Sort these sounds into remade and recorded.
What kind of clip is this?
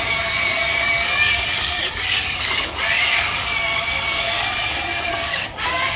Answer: remade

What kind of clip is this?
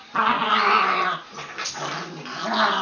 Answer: recorded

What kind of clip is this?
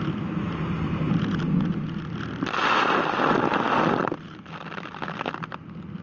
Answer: recorded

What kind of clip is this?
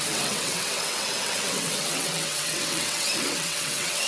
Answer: remade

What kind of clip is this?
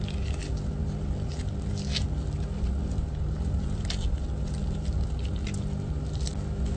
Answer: recorded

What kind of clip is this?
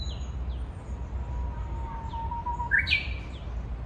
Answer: recorded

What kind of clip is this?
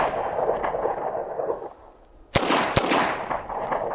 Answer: recorded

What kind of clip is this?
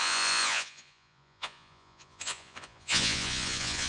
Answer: remade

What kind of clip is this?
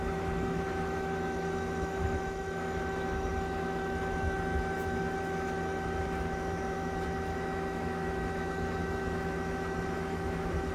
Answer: remade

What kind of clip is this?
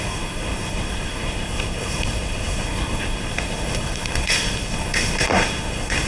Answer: remade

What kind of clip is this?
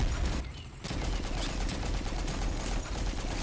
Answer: recorded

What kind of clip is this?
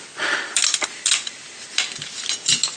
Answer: recorded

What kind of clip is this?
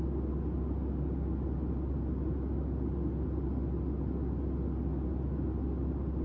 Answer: recorded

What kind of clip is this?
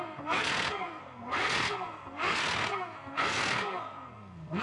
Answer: remade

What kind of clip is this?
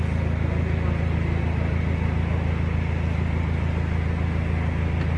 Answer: recorded